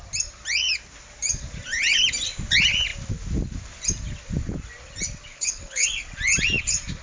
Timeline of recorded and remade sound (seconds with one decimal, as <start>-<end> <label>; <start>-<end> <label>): 0.0-5.3 recorded; 5.3-5.9 remade; 5.9-7.0 recorded